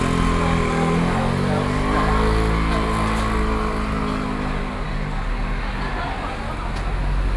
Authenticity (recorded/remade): recorded